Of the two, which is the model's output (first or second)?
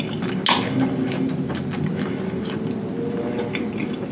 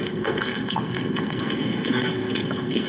second